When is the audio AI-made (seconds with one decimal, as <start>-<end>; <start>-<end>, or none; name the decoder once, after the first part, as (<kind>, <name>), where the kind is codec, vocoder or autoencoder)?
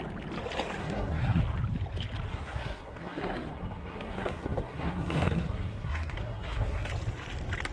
0.8-1.4 (codec, SNAC); 2.3-6.9